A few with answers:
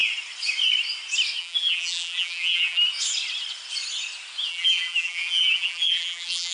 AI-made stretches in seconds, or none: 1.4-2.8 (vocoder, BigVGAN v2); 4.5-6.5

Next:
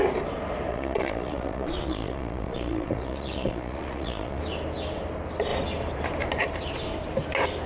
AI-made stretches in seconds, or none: 0.7-4.4 (vocoder, Vocos)

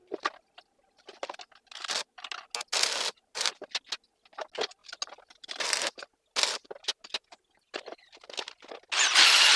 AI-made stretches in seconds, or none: none